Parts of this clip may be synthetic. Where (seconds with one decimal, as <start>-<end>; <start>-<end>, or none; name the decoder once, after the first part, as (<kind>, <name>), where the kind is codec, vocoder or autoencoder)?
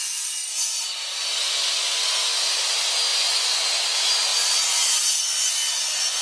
1.4-2.6 (vocoder, Vocos); 3.1-3.7